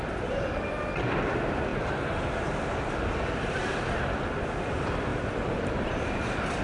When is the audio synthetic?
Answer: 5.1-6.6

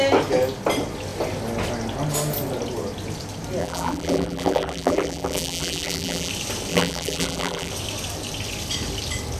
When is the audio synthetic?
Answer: 3.6-6.3; 6.7-7.7

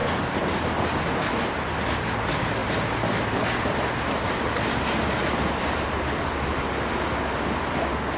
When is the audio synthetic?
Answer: 2.6-6.2